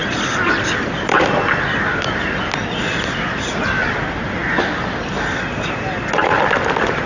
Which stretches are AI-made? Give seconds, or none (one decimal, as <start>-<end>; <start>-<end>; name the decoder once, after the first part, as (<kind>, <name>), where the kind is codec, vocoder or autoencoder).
none